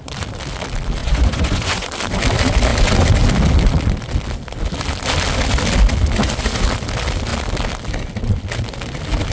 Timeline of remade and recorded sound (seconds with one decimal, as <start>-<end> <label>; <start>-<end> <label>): 0.0-1.0 recorded; 1.0-1.9 remade; 1.9-9.3 recorded